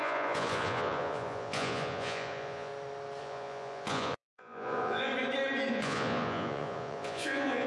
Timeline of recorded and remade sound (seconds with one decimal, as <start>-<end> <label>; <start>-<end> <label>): 0.0-2.7 remade; 2.7-3.2 recorded; 3.2-5.1 remade; 5.1-5.7 recorded; 5.7-7.7 remade